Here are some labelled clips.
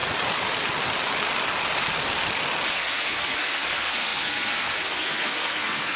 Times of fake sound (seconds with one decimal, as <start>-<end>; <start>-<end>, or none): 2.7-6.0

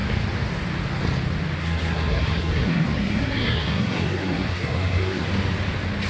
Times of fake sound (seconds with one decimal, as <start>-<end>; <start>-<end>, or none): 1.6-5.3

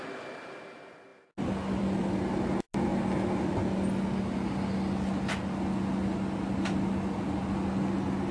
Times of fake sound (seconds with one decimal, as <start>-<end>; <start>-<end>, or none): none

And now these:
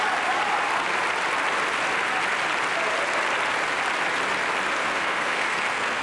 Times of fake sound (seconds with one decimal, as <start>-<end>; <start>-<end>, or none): 4.8-6.0

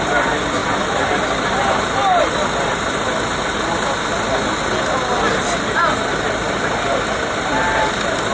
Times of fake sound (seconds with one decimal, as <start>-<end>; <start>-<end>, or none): none

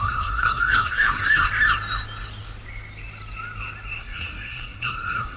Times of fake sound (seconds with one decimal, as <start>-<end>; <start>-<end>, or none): 0.0-1.5; 4.0-5.4

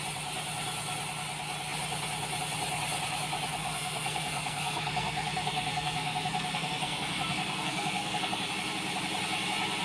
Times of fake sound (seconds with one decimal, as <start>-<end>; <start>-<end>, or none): 3.6-8.5